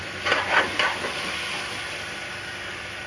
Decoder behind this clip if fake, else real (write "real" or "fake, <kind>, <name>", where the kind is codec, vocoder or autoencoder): real